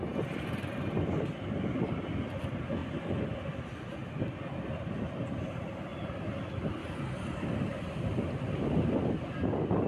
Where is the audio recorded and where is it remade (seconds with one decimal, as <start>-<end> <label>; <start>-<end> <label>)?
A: 0.0-9.9 recorded